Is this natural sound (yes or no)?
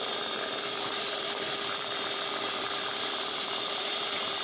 no